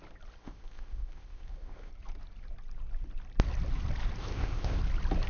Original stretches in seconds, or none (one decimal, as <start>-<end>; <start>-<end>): 0.0-0.4; 1.9-4.2; 4.8-5.3